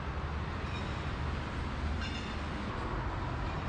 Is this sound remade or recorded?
recorded